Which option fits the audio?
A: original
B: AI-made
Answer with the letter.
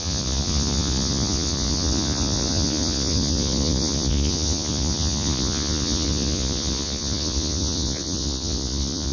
B